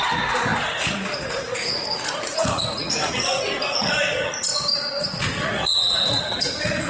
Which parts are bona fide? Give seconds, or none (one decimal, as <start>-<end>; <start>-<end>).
4.5-5.0